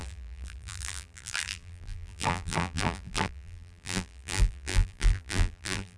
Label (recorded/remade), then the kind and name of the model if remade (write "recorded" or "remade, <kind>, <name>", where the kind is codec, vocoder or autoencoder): remade, vocoder, BigVGAN v2